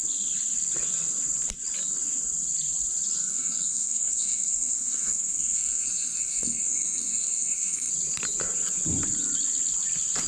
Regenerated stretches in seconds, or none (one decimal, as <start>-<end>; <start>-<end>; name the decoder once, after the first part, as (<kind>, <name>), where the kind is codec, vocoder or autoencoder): 3.2-7.9 (codec, SNAC)